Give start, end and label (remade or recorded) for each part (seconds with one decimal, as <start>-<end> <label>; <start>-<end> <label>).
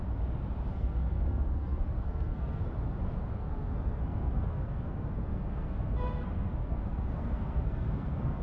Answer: 0.0-0.7 recorded; 0.7-2.6 remade; 2.6-3.3 recorded; 3.3-8.4 remade